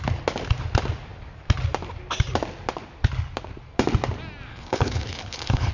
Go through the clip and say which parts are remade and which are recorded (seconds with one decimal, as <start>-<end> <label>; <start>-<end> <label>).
0.0-4.5 recorded; 4.5-5.7 remade